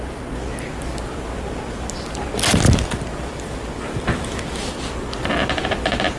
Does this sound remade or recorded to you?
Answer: recorded